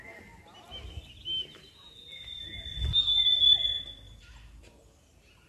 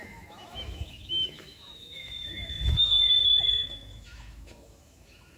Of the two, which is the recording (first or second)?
first